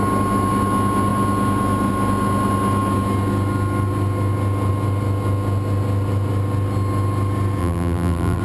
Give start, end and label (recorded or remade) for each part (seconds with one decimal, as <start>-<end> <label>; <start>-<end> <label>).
0.0-7.6 recorded; 7.6-8.4 remade